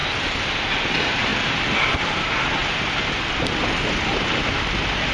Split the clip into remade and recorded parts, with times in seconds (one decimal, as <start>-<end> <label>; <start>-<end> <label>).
0.0-5.1 recorded